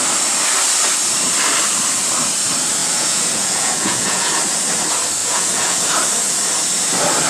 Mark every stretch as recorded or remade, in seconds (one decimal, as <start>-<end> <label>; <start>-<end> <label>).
0.0-2.8 recorded; 2.8-4.3 remade; 4.3-5.2 recorded; 5.2-5.9 remade; 5.9-7.3 recorded